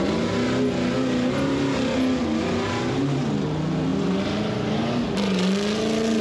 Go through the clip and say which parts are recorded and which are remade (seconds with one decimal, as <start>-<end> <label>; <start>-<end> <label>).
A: 0.0-6.2 recorded